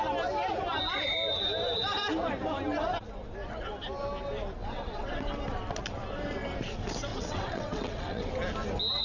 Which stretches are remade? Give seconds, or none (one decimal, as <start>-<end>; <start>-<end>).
4.6-5.2; 7.1-8.3